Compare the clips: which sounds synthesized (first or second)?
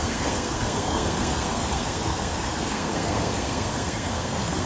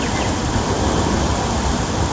first